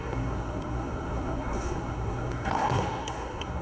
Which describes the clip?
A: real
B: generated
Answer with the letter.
B